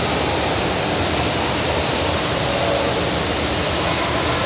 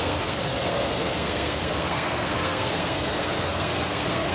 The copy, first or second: second